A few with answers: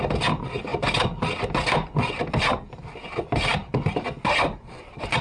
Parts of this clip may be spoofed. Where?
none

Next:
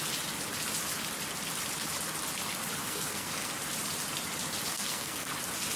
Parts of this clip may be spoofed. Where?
2.8-3.5 (codec, SNAC); 4.7-5.3

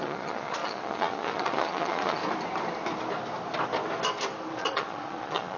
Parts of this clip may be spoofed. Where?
0.0-2.2 (vocoder, Vocos); 4.5-5.6

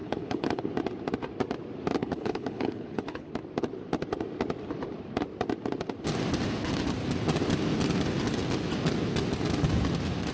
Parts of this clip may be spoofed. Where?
0.0-0.7 (codec, HILCodec); 2.0-3.3

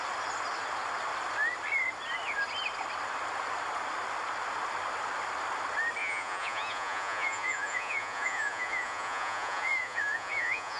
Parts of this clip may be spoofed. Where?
6.0-10.8 (vocoder, Vocos)